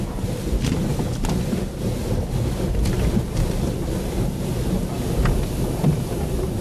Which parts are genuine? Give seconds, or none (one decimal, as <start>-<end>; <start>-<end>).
0.0-6.6